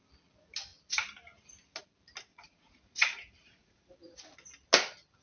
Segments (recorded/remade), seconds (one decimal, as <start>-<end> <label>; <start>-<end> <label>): 0.0-2.3 recorded; 2.3-3.9 remade; 3.9-5.2 recorded